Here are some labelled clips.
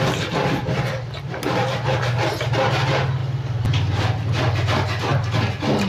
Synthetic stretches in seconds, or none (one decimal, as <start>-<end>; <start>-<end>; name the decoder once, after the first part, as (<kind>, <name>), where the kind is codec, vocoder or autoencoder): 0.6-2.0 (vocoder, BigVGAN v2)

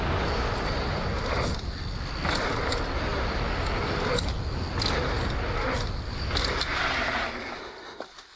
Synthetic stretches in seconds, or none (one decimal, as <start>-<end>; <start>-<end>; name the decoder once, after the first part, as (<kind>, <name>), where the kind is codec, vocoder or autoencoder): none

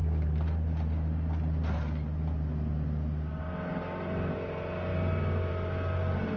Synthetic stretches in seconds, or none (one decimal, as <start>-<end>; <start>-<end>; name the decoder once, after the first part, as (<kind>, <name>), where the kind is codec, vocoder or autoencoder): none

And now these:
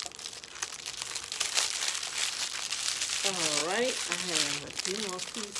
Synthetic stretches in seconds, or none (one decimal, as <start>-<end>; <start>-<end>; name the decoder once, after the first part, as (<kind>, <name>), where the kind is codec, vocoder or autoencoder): 0.0-5.6 (vocoder, BigVGAN v2)

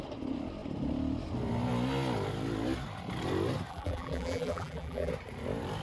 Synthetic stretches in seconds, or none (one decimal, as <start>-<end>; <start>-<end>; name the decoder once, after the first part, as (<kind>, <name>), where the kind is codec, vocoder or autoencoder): 3.7-5.1 (vocoder, BigVGAN v2)

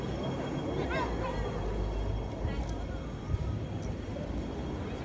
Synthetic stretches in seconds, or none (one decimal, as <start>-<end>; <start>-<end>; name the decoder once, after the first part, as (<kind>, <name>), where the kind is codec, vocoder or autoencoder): none

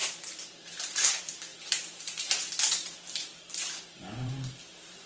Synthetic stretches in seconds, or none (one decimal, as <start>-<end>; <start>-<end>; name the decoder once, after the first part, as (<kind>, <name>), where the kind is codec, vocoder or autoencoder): 0.0-5.1 (vocoder, BigVGAN v2)